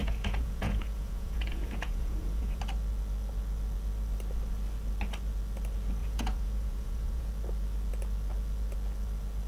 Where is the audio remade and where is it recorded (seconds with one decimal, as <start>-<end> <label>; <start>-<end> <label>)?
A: 0.0-2.6 remade; 2.6-6.0 recorded; 6.0-7.3 remade; 7.3-9.5 recorded